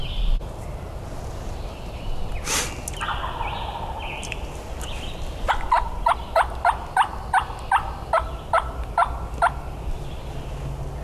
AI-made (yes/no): no